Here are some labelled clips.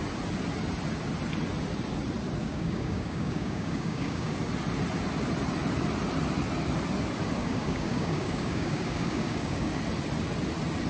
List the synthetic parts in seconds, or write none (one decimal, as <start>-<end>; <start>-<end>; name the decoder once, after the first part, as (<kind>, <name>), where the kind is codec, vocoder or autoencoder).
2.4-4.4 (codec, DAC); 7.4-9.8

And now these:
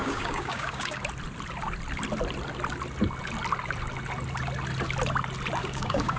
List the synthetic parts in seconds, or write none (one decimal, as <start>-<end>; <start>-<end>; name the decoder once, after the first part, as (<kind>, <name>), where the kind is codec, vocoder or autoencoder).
0.0-1.0 (codec, DAC); 5.6-6.2

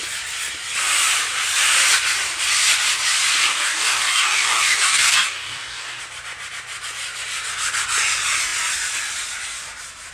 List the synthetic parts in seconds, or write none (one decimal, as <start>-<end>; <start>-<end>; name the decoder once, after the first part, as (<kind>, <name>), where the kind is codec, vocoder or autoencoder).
3.5-6.0 (codec, DAC)

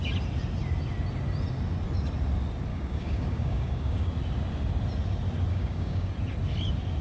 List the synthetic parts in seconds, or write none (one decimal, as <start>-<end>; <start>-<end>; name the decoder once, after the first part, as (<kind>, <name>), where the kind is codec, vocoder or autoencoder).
2.7-4.1 (codec, DAC); 5.5-6.1